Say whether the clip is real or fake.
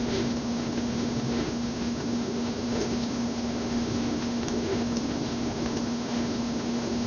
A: fake